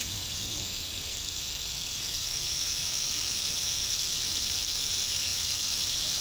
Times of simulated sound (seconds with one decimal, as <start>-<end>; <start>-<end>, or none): 0.0-6.2